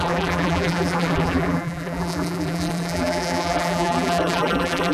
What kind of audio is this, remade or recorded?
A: remade